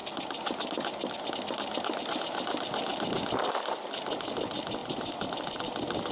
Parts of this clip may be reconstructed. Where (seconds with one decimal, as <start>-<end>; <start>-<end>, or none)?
none

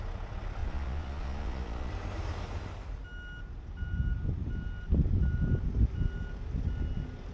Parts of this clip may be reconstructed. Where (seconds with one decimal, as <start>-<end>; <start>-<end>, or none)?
0.6-1.9

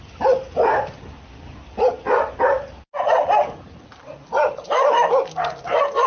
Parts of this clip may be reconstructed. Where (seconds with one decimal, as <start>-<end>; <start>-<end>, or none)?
none

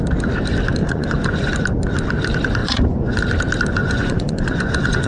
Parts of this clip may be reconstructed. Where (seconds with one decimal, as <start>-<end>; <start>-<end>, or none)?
0.8-1.5; 2.6-3.2; 3.8-5.1

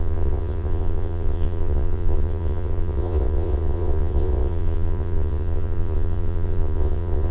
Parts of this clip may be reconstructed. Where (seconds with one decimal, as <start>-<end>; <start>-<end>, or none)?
0.0-7.3

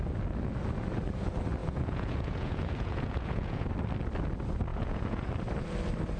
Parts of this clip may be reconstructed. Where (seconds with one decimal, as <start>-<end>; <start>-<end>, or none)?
1.6-3.7; 4.7-5.3